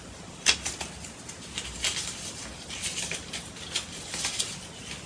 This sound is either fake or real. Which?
real